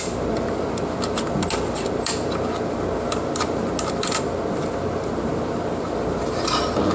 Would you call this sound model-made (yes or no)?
no